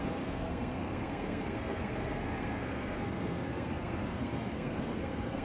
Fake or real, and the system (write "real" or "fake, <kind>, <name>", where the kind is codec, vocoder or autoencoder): fake, codec, SNAC